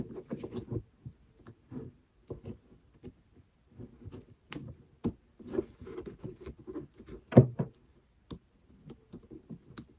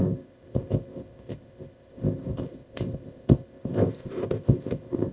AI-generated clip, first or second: second